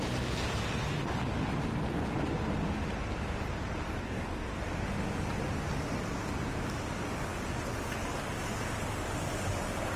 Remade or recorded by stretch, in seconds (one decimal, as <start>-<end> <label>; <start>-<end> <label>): 0.0-4.0 recorded; 4.0-4.6 remade; 4.6-10.0 recorded